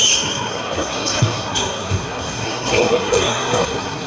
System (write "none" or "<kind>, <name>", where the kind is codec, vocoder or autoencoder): codec, SNAC